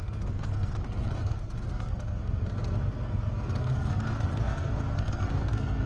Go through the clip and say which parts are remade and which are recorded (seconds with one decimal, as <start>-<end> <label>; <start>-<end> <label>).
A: 0.0-5.9 remade